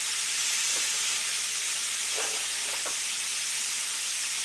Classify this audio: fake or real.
real